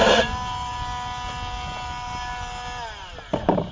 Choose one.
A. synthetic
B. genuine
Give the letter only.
B